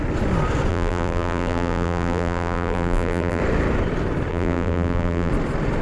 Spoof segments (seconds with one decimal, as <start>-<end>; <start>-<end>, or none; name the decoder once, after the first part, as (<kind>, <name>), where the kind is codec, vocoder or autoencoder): 0.7-3.4 (vocoder, BigVGAN v2); 4.3-5.3